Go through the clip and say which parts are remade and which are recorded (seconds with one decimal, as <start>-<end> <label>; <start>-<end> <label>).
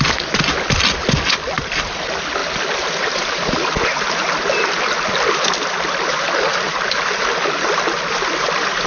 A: 0.0-8.9 recorded